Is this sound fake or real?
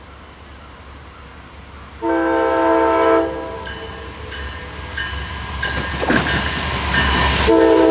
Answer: real